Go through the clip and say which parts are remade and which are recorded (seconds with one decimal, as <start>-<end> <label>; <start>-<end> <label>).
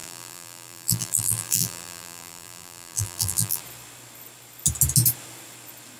0.0-3.6 remade; 3.6-6.0 recorded